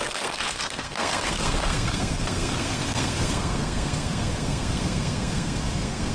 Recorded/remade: remade